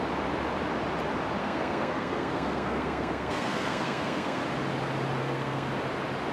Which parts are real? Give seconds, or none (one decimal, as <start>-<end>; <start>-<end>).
0.0-1.4; 4.4-5.2; 5.7-6.3